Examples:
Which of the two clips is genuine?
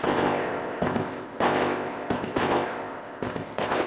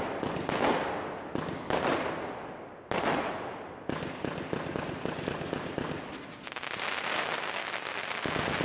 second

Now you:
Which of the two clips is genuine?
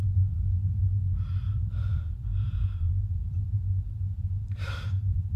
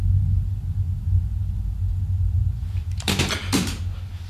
second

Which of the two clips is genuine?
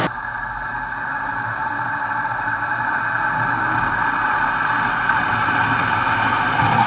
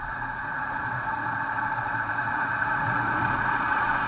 first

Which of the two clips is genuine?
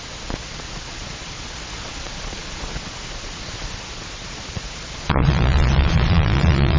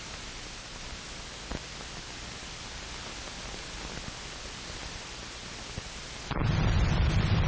second